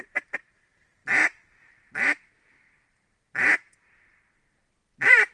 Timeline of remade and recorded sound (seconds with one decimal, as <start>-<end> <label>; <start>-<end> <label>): 0.0-3.5 remade; 3.5-4.4 recorded; 4.4-5.3 remade